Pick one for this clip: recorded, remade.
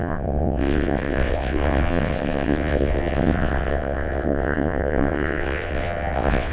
remade